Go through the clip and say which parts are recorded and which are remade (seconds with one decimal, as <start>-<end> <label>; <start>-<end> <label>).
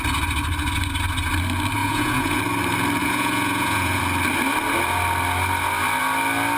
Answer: 0.0-1.8 recorded; 1.8-2.4 remade; 2.4-3.0 recorded; 3.0-4.0 remade; 4.0-6.6 recorded